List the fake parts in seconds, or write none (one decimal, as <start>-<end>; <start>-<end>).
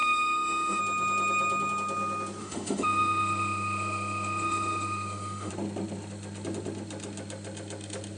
0.0-0.8; 2.4-5.5